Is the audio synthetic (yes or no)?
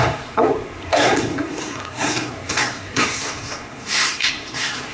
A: yes